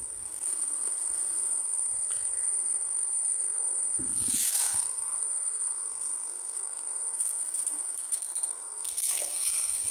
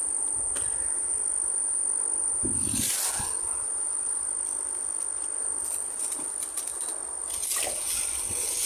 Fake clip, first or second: first